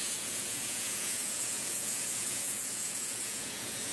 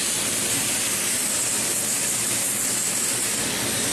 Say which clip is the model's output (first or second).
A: first